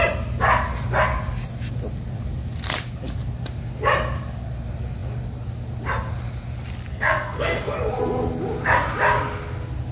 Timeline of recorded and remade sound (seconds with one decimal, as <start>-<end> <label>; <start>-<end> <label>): 0.0-6.9 recorded; 6.9-7.9 remade; 7.9-9.9 recorded